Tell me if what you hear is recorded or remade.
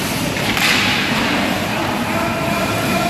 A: remade